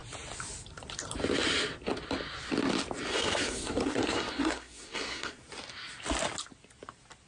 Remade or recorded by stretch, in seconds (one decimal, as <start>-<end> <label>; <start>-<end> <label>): 0.0-3.1 recorded; 3.1-5.4 remade; 5.4-7.3 recorded